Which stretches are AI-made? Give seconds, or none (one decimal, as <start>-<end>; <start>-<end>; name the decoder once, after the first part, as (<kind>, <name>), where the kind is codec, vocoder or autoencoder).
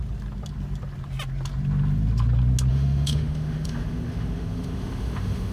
2.7-5.5 (autoencoder, DAC-VAE)